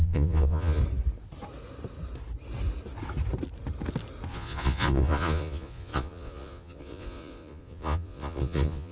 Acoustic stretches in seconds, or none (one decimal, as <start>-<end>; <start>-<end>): 0.8-4.3